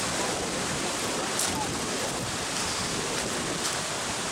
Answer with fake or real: real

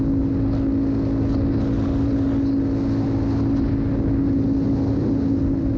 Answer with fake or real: real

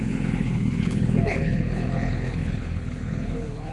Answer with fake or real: fake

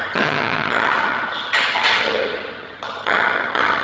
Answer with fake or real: fake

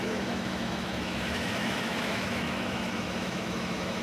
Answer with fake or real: fake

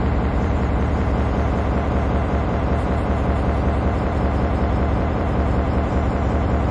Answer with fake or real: fake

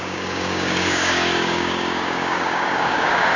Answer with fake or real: fake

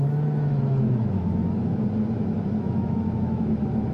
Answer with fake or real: fake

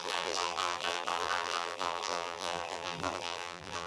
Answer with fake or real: fake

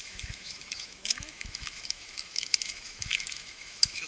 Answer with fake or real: fake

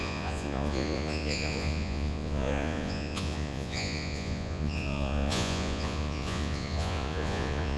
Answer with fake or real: fake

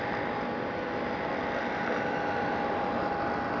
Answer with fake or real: real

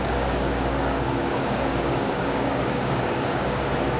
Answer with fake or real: fake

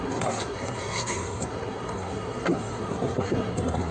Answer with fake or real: fake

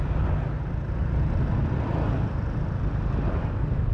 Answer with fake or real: real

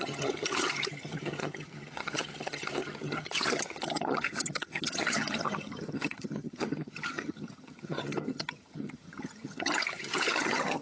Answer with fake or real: fake